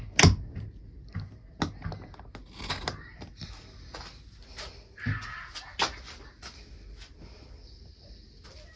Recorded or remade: recorded